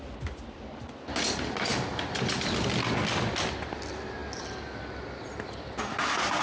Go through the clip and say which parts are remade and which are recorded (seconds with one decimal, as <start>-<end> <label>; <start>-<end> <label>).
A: 0.0-6.4 recorded